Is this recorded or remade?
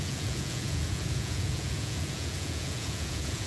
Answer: remade